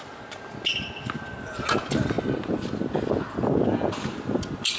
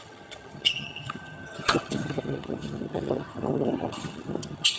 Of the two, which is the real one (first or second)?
first